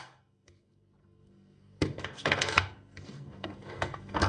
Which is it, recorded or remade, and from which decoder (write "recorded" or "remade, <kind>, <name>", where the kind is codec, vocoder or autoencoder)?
remade, codec, SNAC